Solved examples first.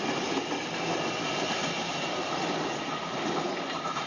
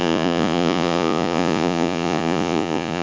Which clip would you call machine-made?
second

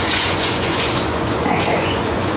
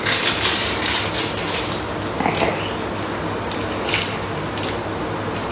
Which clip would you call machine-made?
first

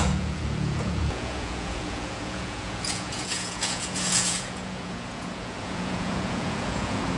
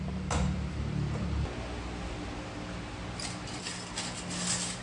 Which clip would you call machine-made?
first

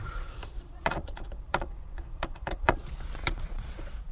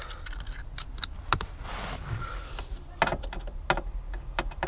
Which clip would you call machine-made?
first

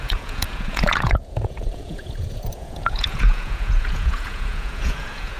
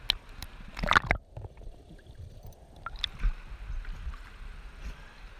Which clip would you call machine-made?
first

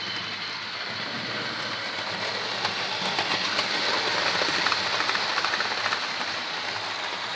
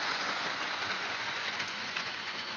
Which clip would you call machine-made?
second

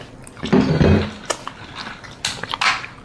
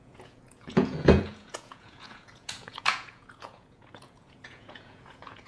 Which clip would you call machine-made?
second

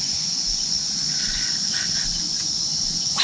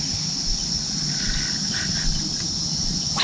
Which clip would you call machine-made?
first